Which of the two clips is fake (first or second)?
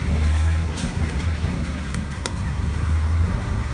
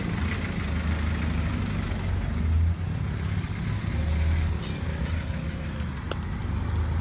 first